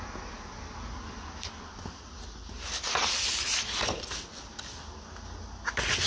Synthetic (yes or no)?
no